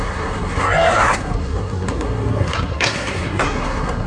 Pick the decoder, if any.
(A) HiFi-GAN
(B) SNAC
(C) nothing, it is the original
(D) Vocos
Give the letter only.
B